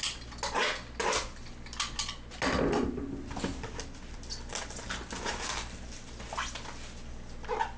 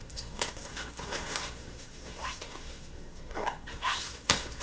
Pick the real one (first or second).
first